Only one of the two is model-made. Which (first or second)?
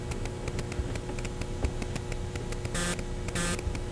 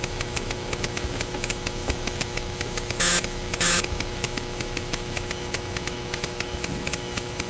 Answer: second